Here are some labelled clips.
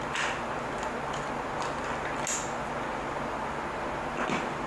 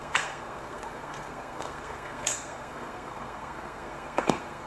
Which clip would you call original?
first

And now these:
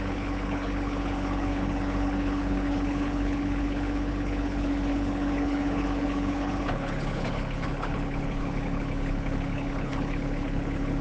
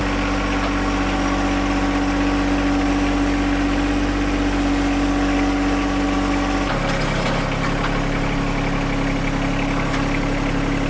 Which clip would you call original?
second